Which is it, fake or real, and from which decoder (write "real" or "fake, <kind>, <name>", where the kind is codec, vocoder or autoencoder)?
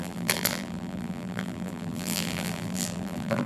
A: fake, vocoder, BigVGAN v2